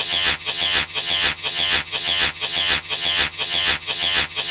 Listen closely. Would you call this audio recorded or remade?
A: remade